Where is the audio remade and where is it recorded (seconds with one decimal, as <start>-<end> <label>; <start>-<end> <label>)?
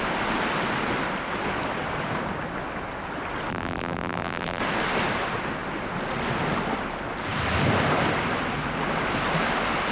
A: 0.0-3.5 recorded; 3.5-4.6 remade; 4.6-9.9 recorded